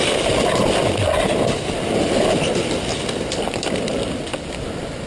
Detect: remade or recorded recorded